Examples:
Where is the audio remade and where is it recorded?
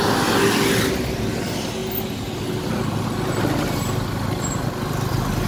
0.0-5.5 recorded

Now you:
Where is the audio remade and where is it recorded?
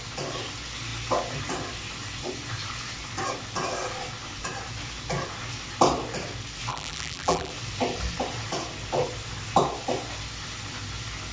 0.0-6.7 recorded; 6.7-7.5 remade; 7.5-11.3 recorded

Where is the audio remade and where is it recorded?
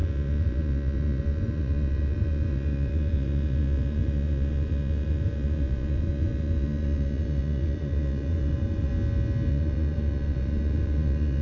0.0-8.9 remade; 8.9-9.5 recorded; 9.5-11.4 remade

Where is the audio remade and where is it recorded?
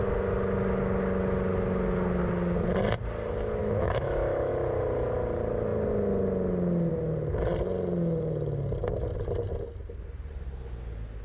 0.0-3.6 recorded; 3.6-4.5 remade; 4.5-11.2 recorded